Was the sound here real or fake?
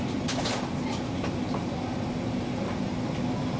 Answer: real